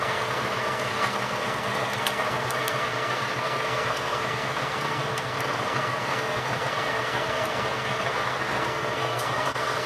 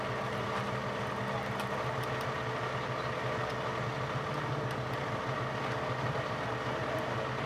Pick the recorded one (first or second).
second